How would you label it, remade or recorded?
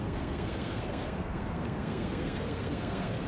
remade